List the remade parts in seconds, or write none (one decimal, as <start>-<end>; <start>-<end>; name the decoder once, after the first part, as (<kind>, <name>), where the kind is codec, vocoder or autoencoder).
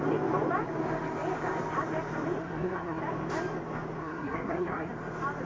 2.4-3.0 (codec, SNAC); 4.0-4.9